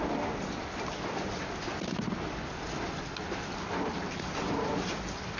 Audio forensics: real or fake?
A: real